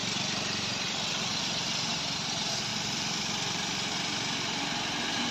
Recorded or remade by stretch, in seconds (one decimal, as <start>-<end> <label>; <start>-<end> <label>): 0.0-1.4 remade; 1.4-2.7 recorded; 2.7-4.6 remade; 4.6-5.3 recorded